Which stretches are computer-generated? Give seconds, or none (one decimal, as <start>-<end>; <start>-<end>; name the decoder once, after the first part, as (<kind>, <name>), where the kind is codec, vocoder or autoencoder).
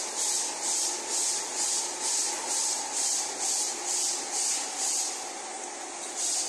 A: none